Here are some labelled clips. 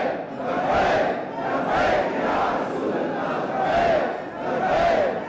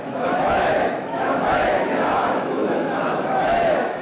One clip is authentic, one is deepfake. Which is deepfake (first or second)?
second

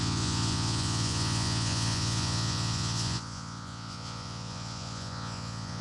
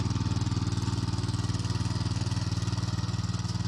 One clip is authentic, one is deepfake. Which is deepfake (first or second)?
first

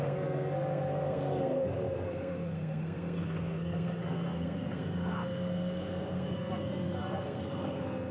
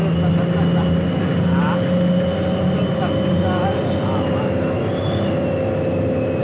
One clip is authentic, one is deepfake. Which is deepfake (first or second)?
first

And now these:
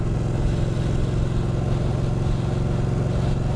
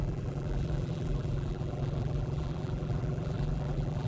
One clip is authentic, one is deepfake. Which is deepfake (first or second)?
second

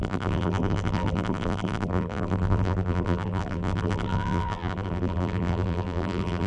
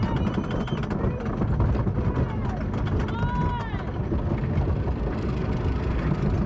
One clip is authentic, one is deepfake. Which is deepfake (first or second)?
first